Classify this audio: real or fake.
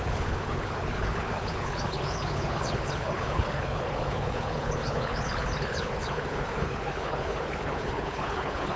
fake